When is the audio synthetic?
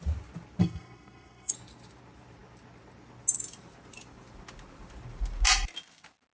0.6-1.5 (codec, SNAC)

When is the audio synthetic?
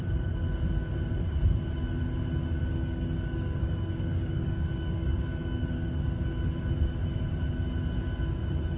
2.7-6.2 (codec, DAC)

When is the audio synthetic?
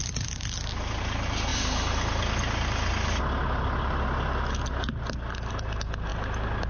none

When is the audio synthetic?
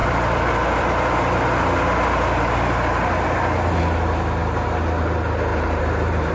5.5-6.3 (vocoder, BigVGAN v2)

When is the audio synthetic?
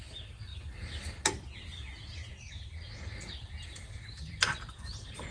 none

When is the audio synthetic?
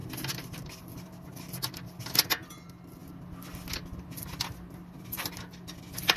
0.0-0.8 (vocoder, BigVGAN v2)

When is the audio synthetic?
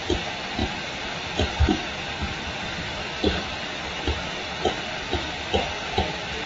none